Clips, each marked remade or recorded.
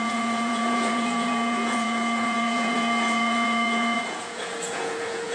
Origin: remade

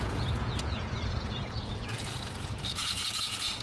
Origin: remade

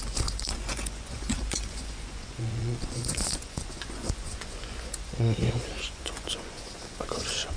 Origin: remade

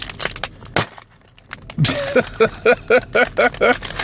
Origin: recorded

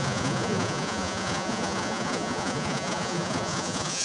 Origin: remade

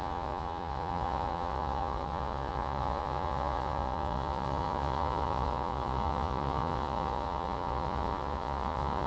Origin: remade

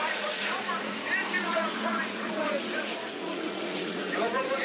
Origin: remade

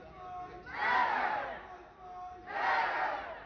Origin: recorded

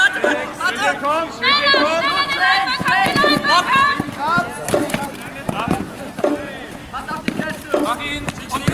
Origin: recorded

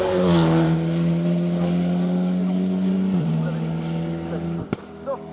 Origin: recorded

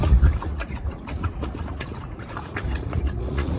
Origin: remade